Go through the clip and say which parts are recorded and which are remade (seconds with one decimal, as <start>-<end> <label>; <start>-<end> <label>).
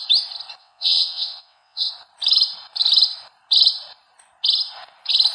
0.0-0.6 recorded; 0.6-1.9 remade; 1.9-5.3 recorded